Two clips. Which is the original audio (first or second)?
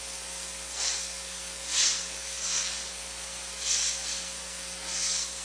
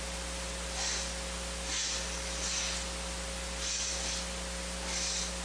second